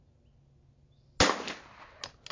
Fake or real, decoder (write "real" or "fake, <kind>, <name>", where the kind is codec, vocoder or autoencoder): real